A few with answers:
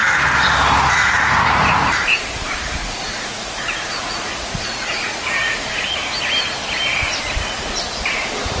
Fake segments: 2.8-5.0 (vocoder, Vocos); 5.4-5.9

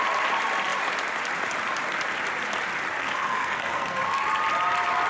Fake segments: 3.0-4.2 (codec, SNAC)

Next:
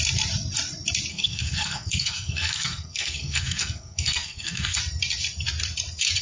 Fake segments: 1.1-4.8 (codec, SNAC)